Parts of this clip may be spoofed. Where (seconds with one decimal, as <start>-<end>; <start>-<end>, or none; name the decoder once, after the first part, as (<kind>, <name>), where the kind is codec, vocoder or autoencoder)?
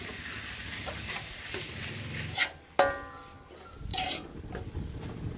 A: 0.7-1.5 (vocoder, BigVGAN v2); 3.9-5.4